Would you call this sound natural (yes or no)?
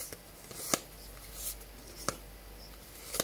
yes